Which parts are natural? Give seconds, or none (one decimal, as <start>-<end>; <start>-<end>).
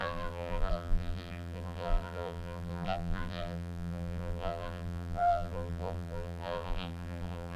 none